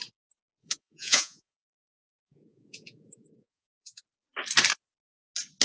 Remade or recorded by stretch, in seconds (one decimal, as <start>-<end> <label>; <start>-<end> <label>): 0.0-0.6 recorded; 0.6-4.0 remade; 4.0-5.6 recorded